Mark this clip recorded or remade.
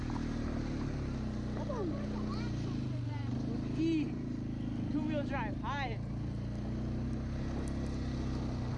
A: recorded